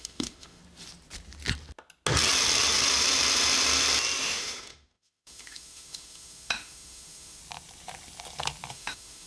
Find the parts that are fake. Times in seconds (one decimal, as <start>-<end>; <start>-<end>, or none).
0.0-0.6; 4.2-7.4; 8.7-9.3